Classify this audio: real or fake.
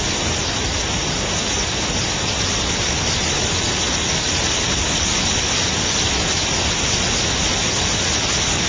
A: real